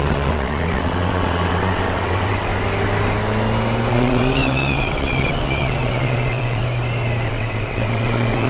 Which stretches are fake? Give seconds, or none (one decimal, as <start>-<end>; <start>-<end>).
0.0-2.5; 3.9-6.6; 7.3-8.5